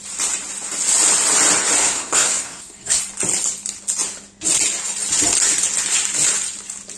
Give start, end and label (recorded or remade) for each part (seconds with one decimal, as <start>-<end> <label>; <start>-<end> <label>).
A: 0.0-1.8 recorded; 1.8-3.0 remade; 3.0-7.0 recorded